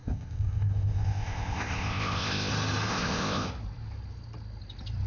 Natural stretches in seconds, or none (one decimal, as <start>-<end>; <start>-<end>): 2.5-2.9; 3.5-5.1